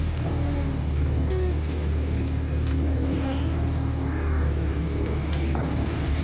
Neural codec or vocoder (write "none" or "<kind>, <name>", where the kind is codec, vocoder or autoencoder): codec, DAC